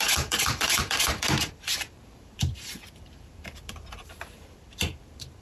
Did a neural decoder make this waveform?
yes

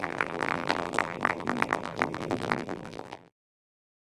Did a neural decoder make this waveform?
yes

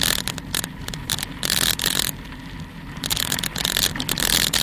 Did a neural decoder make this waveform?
no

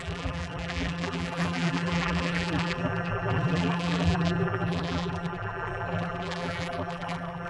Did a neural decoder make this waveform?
yes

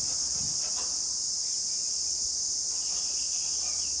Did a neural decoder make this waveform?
no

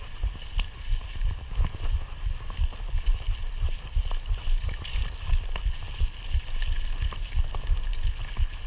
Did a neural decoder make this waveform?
no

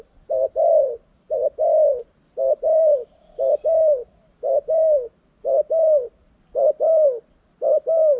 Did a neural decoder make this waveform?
no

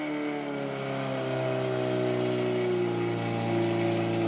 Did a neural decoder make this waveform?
no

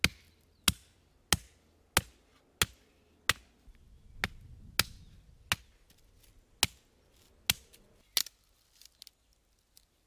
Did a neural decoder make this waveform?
no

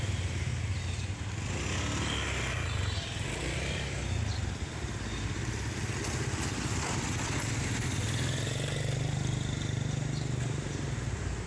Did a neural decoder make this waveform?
no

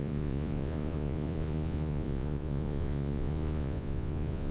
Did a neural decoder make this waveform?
yes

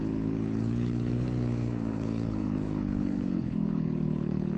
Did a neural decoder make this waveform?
yes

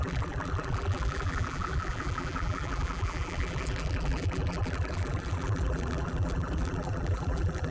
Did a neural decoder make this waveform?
yes